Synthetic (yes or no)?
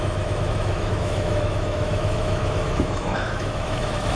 yes